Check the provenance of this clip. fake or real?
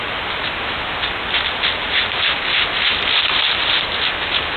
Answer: real